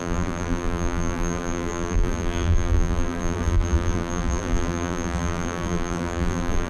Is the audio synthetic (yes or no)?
yes